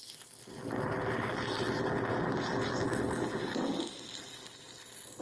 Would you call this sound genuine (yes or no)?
yes